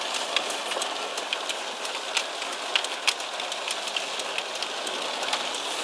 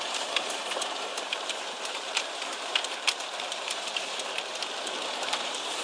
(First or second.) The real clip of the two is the first